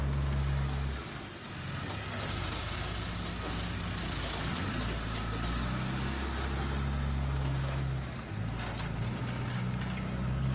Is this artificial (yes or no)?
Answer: no